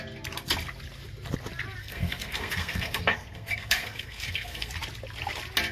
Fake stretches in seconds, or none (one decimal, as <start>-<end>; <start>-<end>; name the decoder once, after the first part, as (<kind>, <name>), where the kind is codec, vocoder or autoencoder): 1.8-4.7 (codec, SNAC)